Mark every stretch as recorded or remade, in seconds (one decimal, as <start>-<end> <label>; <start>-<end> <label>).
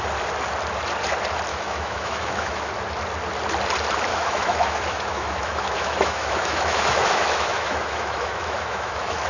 0.0-1.5 recorded; 1.5-2.7 remade; 2.7-4.1 recorded; 4.1-9.3 remade